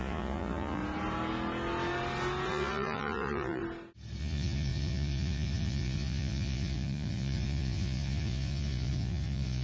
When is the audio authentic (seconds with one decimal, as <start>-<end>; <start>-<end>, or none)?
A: 0.8-2.5; 3.6-4.2